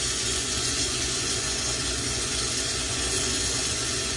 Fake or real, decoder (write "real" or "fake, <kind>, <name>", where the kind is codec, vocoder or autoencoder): fake, vocoder, Vocos